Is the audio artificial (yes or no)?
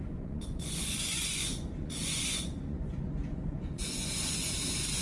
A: yes